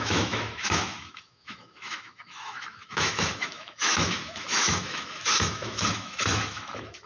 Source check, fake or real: fake